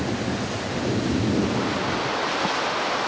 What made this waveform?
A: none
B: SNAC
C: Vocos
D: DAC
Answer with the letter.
A